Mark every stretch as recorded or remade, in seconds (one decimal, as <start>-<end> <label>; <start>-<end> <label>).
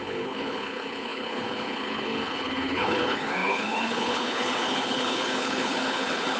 0.0-6.4 remade